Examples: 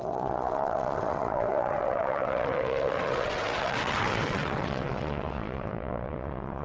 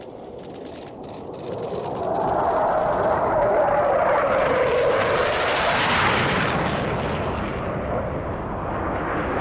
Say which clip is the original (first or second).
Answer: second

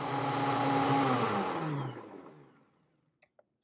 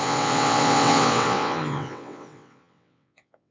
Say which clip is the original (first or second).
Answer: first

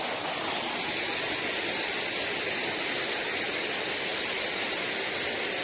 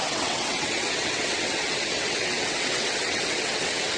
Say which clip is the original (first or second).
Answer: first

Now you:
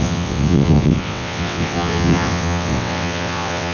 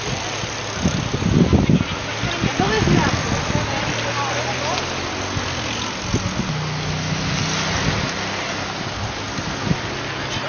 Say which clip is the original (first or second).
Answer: second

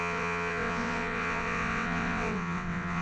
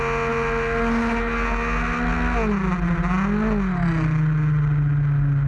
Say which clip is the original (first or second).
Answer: second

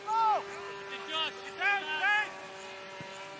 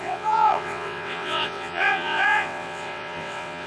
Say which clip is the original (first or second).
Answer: first